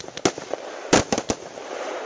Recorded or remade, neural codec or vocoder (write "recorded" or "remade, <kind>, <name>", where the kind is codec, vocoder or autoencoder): recorded